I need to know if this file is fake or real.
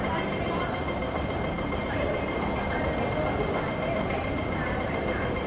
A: real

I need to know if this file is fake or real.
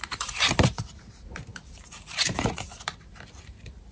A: real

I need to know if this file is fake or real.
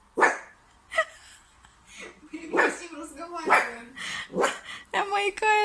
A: real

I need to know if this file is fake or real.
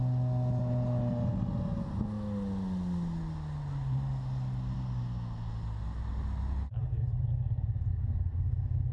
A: real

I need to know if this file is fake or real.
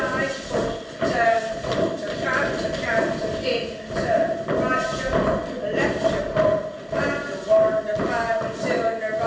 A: real